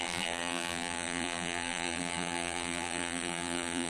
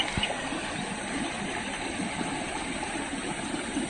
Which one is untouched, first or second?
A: second